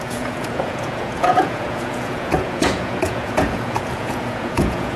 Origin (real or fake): fake